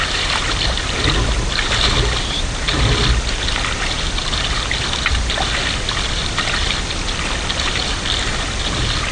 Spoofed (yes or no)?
no